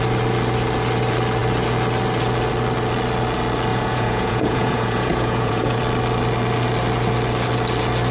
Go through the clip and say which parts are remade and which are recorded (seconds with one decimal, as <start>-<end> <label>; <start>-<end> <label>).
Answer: 0.0-3.7 recorded; 3.7-5.8 remade; 5.8-8.1 recorded